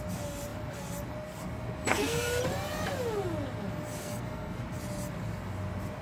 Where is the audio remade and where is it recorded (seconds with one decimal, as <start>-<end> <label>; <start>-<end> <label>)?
0.0-1.9 recorded; 1.9-2.4 remade; 2.4-4.0 recorded; 4.0-4.6 remade; 4.6-6.0 recorded